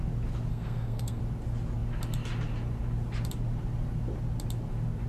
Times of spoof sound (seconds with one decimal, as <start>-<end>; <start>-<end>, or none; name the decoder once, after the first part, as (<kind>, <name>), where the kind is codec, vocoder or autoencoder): 0.5-1.2 (codec, SNAC)